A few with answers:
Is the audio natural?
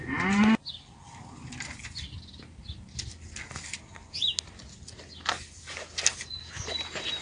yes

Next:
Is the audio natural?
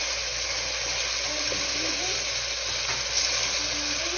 yes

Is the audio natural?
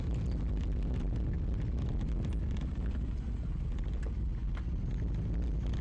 yes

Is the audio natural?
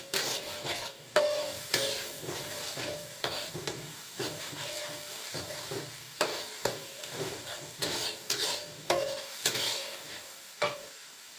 no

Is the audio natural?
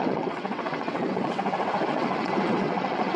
no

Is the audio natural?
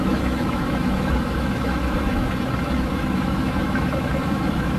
no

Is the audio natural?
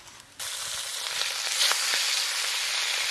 yes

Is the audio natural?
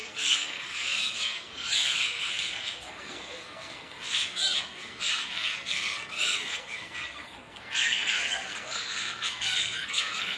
no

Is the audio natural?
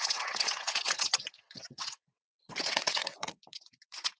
no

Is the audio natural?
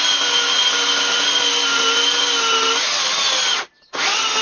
yes